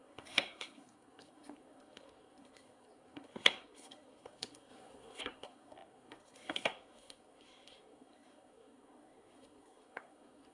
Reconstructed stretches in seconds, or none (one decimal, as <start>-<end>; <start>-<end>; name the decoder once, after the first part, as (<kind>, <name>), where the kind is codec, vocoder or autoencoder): 0.0-10.5 (codec, SNAC)